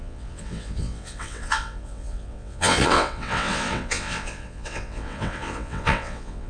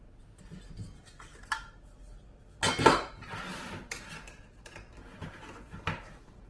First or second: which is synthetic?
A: first